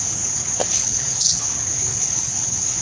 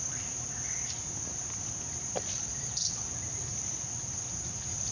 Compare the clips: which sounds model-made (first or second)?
first